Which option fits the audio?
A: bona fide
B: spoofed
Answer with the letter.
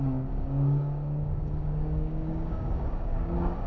B